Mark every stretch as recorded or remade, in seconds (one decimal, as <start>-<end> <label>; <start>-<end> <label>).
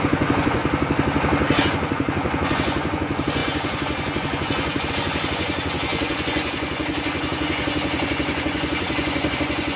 0.0-0.6 remade; 0.6-1.6 recorded; 1.6-9.8 remade